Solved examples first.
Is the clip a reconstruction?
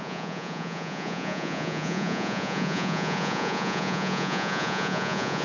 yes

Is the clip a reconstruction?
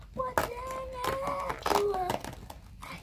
no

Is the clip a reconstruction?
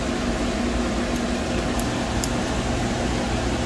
no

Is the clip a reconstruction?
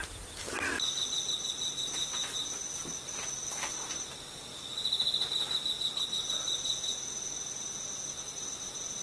no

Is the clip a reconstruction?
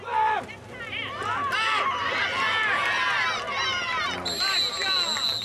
no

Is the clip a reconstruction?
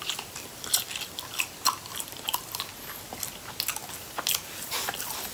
no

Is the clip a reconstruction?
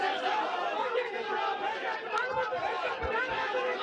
no